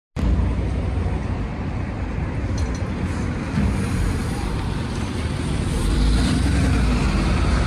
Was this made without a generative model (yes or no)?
yes